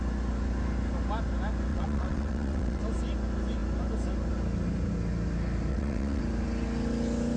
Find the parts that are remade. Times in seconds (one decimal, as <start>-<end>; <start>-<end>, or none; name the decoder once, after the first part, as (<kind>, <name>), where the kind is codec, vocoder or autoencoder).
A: 1.7-2.8 (vocoder, WaveNeXt); 5.7-6.2